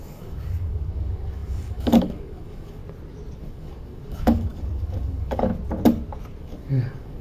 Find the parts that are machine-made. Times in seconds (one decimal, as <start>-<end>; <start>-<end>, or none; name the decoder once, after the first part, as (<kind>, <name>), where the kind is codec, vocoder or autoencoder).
0.0-2.8 (codec, DAC); 3.4-5.5; 6.4-7.2